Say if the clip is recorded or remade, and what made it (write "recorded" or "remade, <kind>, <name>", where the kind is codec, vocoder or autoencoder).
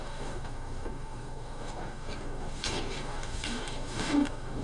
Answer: remade, codec, DAC